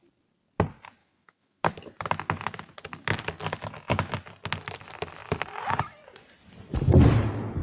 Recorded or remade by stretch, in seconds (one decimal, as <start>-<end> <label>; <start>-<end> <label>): 0.0-1.0 recorded; 1.0-1.7 remade; 1.7-7.6 recorded